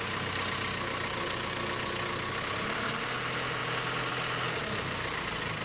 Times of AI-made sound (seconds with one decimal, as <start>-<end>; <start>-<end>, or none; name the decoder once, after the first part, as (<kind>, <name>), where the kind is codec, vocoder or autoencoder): none